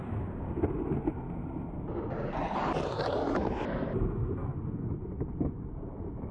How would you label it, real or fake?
real